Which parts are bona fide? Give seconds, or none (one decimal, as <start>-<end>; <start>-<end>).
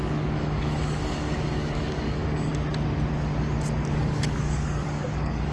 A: 2.5-3.9